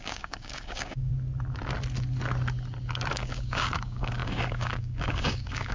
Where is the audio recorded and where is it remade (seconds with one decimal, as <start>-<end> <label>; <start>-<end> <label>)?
0.0-1.1 remade; 1.1-3.1 recorded; 3.1-5.7 remade